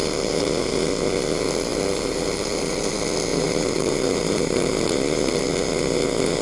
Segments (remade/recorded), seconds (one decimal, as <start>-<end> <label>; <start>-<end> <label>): 0.0-0.5 remade; 0.5-1.7 recorded; 1.7-2.9 remade; 2.9-3.3 recorded; 3.3-5.4 remade; 5.4-6.4 recorded